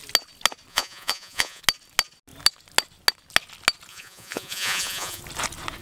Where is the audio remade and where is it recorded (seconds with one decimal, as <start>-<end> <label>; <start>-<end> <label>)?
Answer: 0.0-0.7 recorded; 0.7-1.6 remade; 1.6-3.9 recorded; 3.9-5.2 remade; 5.2-5.8 recorded